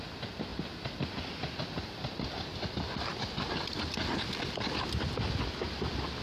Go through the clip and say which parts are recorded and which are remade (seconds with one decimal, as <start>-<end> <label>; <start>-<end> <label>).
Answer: 0.0-0.5 recorded; 0.5-2.4 remade; 2.4-6.2 recorded